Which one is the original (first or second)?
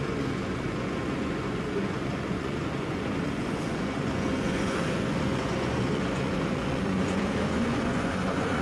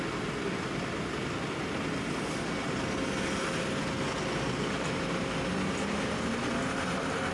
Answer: second